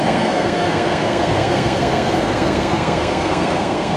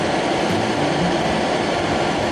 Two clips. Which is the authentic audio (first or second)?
second